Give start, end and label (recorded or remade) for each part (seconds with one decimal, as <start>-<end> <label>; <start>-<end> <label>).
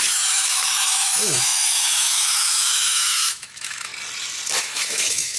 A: 0.0-3.9 remade; 3.9-4.6 recorded; 4.6-5.4 remade